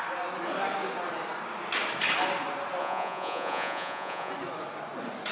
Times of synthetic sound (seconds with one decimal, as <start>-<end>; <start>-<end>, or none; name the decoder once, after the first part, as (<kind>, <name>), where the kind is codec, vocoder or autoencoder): 2.8-4.3 (vocoder, Vocos)